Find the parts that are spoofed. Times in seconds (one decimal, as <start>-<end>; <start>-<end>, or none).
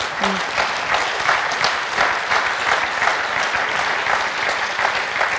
none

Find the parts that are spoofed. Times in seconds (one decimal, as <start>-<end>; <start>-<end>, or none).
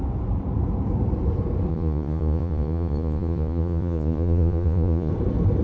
1.7-5.1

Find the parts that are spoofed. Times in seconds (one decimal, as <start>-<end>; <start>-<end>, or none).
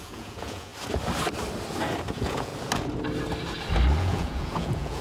0.0-0.7; 2.1-2.5; 4.0-5.0